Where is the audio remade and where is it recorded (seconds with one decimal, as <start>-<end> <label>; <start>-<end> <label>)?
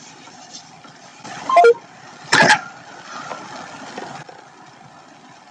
0.0-5.5 recorded